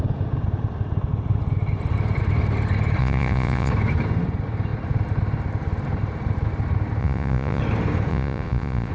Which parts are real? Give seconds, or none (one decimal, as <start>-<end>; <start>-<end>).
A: 0.0-3.0; 3.7-7.0; 7.6-8.1